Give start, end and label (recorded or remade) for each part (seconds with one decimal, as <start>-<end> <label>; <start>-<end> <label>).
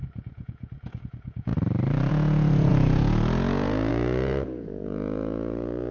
0.0-1.5 remade; 1.5-2.1 recorded; 2.1-5.9 remade